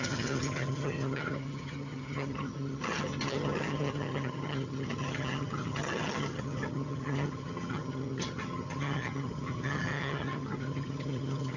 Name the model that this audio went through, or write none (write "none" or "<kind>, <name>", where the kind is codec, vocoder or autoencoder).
vocoder, HiFi-GAN